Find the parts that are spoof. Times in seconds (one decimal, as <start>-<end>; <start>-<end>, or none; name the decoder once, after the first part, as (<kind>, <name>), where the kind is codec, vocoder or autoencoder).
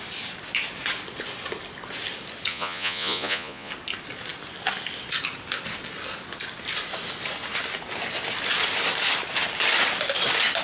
2.5-3.7 (vocoder, Vocos)